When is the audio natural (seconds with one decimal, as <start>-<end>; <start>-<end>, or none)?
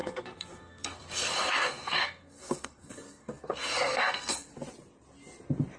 4.5-5.8